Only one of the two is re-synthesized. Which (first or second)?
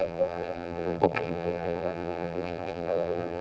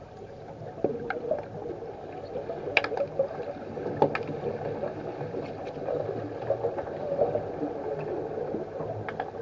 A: first